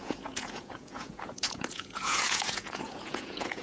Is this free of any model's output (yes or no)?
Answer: no